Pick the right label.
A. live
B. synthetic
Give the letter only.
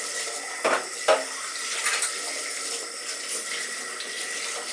A